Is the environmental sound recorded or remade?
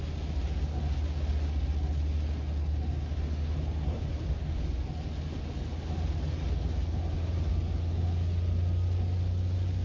recorded